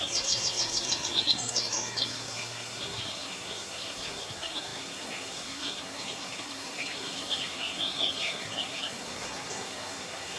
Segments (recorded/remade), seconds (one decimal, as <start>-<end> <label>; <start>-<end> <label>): 0.0-10.4 remade